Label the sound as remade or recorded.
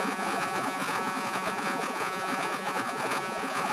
remade